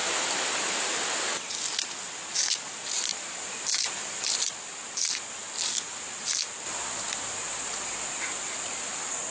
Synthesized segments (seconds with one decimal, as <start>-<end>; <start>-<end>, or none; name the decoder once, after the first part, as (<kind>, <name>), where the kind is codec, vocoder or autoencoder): none